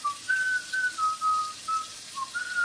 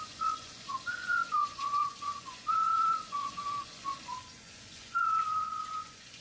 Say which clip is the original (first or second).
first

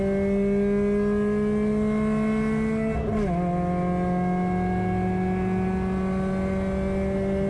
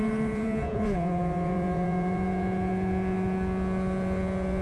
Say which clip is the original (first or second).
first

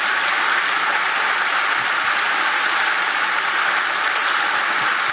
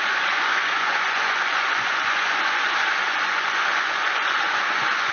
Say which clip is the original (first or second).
first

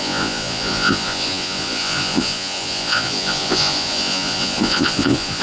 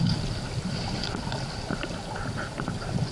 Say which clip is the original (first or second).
second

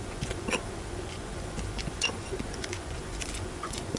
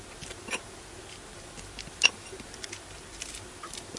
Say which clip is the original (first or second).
second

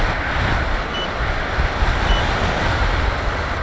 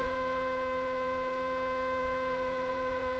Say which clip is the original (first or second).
first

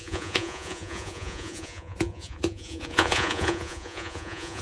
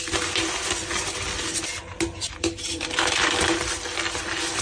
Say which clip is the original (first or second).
second